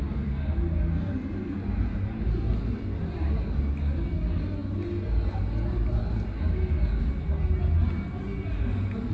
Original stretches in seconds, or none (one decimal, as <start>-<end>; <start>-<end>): 0.0-9.1